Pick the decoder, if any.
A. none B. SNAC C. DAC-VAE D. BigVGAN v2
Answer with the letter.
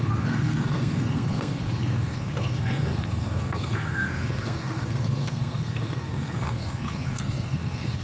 B